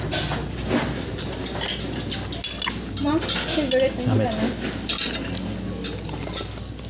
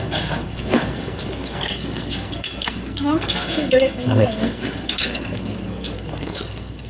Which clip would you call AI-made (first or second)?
second